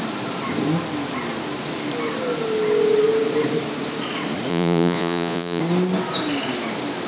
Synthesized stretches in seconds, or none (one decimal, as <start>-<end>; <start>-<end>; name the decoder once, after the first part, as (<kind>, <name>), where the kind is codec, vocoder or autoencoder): 4.5-5.6 (vocoder, Vocos)